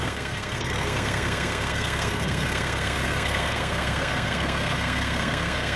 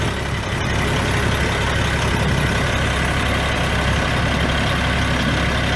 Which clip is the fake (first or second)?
first